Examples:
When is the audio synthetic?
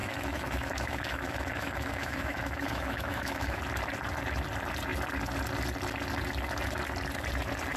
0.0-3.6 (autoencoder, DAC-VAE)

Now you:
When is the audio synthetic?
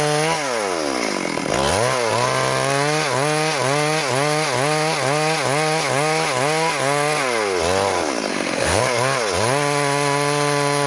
8.3-8.8 (autoencoder, DAC-VAE)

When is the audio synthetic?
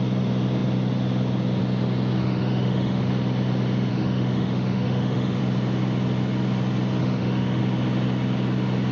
2.2-3.1 (autoencoder, DAC-VAE); 3.9-5.4; 7.0-7.6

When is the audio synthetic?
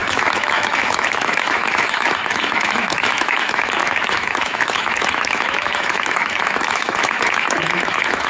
0.0-8.3 (autoencoder, DAC-VAE)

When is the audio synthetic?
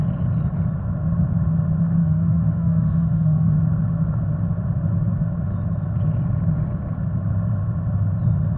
2.0-3.5 (autoencoder, DAC-VAE)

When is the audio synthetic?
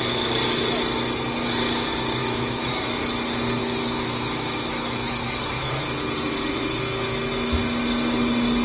2.2-2.8 (autoencoder, DAC-VAE); 3.6-5.8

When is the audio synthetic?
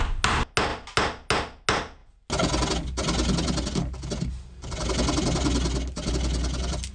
none